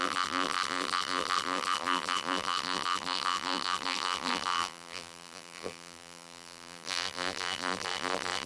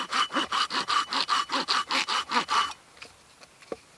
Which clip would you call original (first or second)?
second